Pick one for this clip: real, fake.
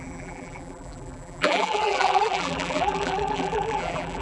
fake